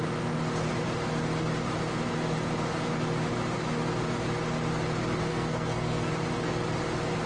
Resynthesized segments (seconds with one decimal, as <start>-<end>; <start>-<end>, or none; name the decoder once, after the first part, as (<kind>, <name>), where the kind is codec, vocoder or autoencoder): 5.3-6.1 (codec, SNAC)